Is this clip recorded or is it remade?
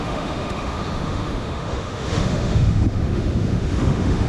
remade